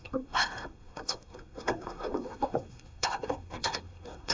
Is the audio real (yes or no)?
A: no